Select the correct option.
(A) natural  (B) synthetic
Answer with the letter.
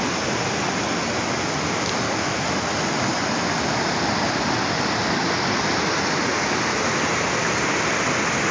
A